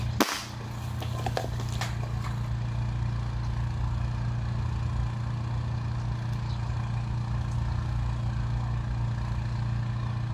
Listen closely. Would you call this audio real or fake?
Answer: real